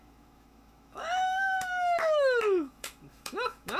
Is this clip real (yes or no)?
no